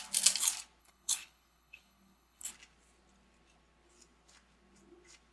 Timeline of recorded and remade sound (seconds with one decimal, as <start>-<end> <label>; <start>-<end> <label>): 0.0-0.8 recorded; 0.8-2.5 remade; 2.5-5.3 recorded